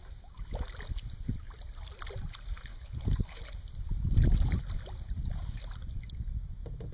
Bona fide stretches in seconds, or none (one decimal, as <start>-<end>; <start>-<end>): 0.0-2.7; 3.5-6.9